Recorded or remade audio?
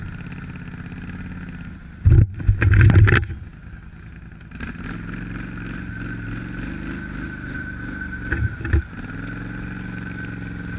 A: recorded